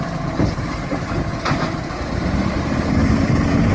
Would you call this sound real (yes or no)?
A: no